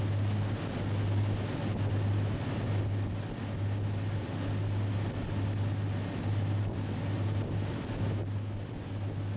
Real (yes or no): yes